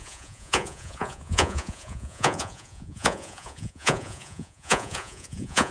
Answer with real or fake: fake